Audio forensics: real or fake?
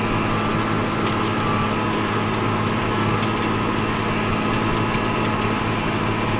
real